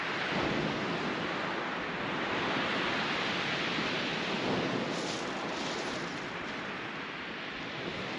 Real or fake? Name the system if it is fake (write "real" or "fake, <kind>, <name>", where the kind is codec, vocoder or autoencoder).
real